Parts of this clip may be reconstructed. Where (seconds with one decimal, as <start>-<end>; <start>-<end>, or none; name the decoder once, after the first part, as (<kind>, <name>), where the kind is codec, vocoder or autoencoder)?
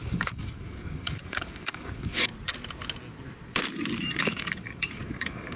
0.0-2.3 (codec, DAC); 4.0-5.6